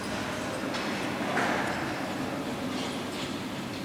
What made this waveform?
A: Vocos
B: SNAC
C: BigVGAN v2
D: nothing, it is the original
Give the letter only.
D